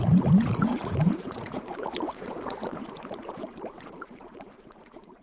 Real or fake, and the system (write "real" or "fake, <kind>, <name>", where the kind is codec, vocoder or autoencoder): fake, vocoder, Vocos